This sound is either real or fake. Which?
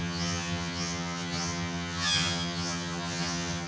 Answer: fake